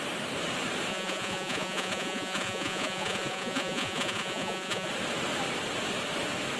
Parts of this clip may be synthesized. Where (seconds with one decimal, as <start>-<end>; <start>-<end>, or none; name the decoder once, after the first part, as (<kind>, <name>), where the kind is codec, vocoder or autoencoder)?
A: 0.9-4.9 (vocoder, Vocos)